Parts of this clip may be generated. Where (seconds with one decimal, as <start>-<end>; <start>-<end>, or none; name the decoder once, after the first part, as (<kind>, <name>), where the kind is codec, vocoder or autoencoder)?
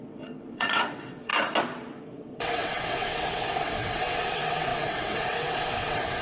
0.0-1.3 (vocoder, WaveNeXt); 2.0-6.2